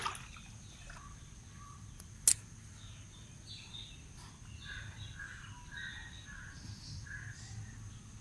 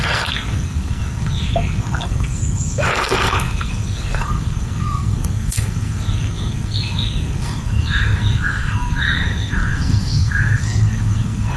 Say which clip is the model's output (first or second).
second